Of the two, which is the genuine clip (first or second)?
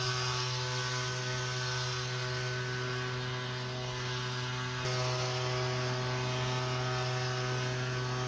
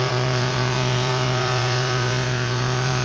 first